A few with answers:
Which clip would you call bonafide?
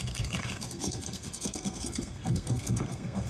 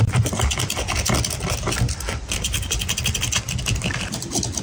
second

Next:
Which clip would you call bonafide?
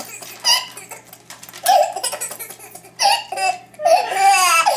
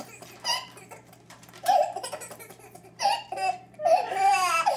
first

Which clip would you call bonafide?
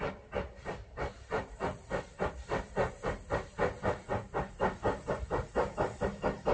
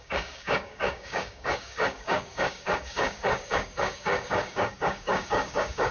first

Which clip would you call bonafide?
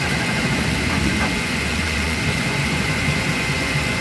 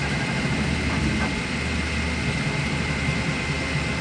second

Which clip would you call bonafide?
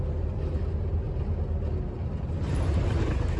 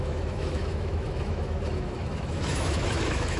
first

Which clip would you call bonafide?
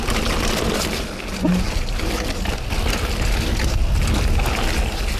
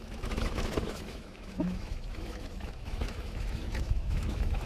first